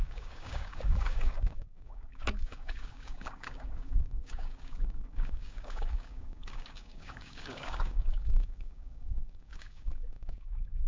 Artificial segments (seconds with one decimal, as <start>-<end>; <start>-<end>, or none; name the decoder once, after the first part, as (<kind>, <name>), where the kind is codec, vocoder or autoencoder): 0.0-10.9 (codec, DAC)